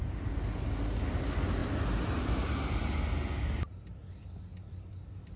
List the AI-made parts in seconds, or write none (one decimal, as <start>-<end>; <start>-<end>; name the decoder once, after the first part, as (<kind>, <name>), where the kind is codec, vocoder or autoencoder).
none